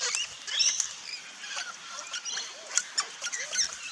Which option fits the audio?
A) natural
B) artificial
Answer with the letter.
A